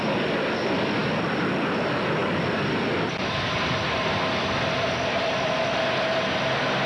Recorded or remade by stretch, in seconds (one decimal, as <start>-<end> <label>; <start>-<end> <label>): 0.0-6.9 recorded